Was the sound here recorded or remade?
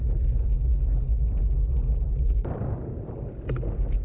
recorded